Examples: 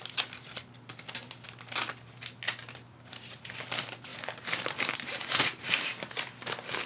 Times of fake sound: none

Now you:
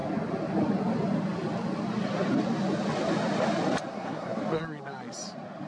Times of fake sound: 3.9-4.4 (codec, SNAC)

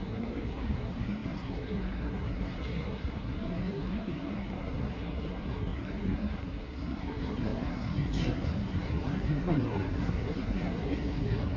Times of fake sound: 0.0-11.6 (codec, SNAC)